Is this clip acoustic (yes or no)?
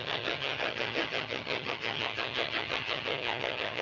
no